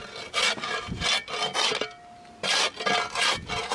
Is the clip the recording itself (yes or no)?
yes